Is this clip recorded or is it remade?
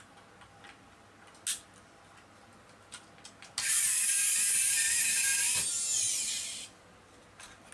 recorded